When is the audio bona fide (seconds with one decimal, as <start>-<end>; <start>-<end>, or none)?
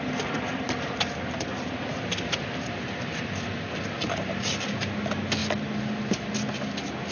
0.0-7.1